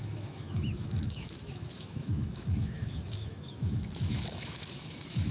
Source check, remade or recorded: remade